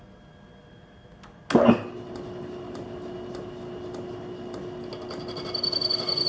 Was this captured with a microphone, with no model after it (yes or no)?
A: yes